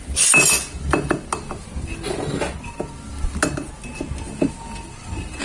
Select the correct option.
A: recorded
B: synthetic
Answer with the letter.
A